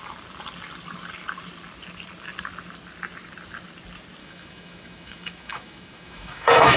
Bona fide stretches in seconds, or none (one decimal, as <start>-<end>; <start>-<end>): 0.0-4.2